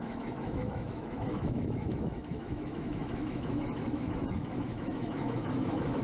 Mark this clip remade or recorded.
remade